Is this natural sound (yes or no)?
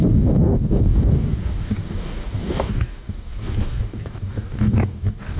no